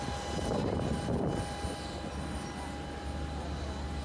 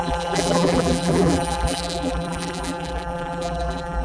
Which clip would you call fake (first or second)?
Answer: second